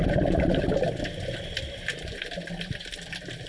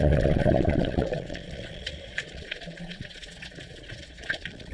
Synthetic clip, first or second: second